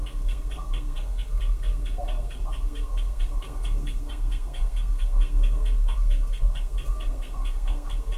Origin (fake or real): fake